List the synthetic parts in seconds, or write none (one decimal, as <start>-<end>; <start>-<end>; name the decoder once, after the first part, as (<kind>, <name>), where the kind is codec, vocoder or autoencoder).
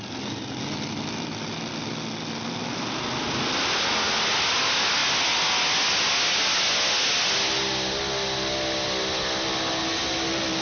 none